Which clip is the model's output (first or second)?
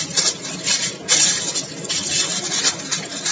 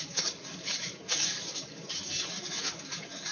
second